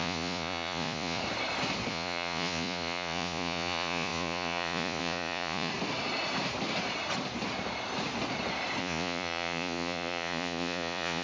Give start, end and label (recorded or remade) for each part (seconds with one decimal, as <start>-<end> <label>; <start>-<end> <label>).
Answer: 0.0-1.2 remade; 1.2-1.9 recorded; 1.9-5.7 remade; 5.7-8.8 recorded; 8.8-11.2 remade